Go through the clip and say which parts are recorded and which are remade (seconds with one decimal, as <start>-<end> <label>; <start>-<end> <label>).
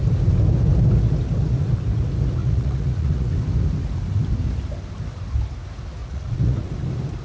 0.0-2.4 recorded; 2.4-3.3 remade; 3.3-6.0 recorded; 6.0-6.7 remade; 6.7-7.2 recorded